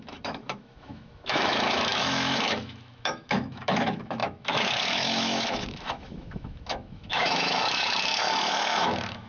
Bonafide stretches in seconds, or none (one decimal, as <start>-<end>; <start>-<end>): none